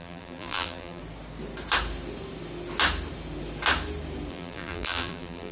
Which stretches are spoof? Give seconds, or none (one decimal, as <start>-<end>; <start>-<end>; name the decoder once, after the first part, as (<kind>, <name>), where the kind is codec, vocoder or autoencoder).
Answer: 0.0-1.0 (vocoder, BigVGAN v2); 4.3-5.5